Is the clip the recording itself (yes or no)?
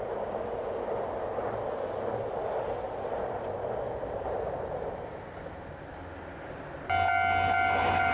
yes